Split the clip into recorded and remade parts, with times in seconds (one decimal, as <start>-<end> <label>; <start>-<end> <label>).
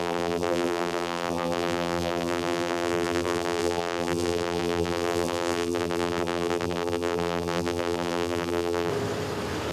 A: 0.0-8.9 remade; 8.9-9.7 recorded